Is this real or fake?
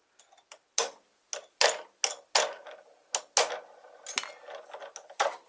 real